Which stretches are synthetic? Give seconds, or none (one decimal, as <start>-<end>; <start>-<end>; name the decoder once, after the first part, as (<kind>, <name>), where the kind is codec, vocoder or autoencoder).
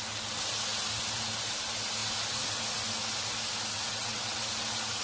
3.7-4.4 (vocoder, WaveNeXt)